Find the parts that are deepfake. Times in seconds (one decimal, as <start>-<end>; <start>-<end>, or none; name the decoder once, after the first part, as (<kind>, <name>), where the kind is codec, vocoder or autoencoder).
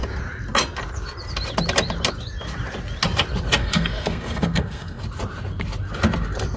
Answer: 3.6-5.0 (codec, SNAC)